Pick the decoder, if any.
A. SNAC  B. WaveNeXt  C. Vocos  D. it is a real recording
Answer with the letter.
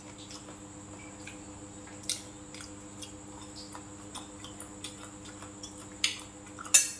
D